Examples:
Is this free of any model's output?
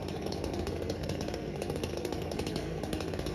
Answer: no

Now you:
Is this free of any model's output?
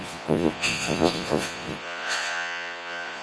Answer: no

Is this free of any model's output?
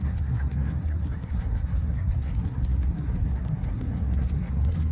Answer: no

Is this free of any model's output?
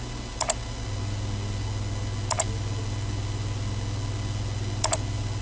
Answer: yes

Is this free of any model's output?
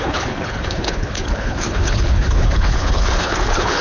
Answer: no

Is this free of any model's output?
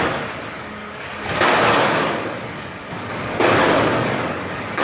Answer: no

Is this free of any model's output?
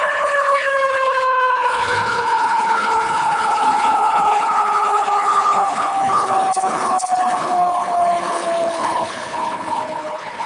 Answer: no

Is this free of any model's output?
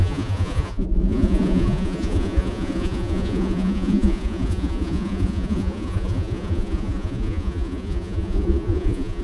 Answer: no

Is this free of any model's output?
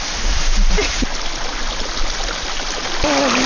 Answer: yes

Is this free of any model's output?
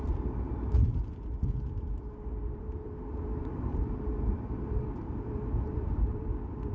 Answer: no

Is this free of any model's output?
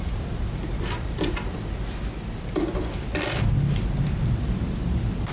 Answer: yes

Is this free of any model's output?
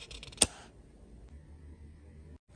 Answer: yes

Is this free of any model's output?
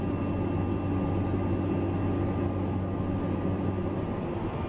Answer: yes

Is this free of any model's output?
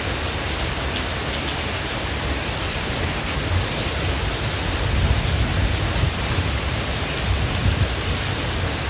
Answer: yes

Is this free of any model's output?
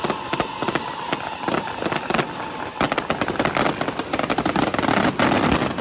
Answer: yes